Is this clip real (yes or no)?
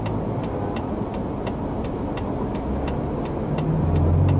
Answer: yes